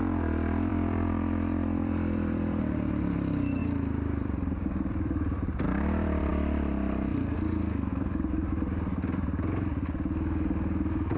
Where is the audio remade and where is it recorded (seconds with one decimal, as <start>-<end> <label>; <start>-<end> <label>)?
0.0-0.7 recorded; 0.7-2.6 remade; 2.6-3.6 recorded; 3.6-6.3 remade; 6.3-11.2 recorded